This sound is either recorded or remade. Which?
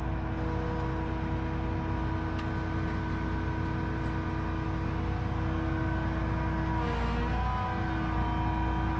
recorded